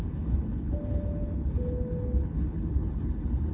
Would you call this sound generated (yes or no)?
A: yes